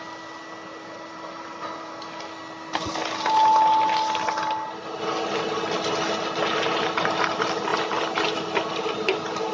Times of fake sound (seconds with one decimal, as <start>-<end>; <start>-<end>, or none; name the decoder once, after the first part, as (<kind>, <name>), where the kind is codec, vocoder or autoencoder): 0.7-1.9 (vocoder, BigVGAN v2)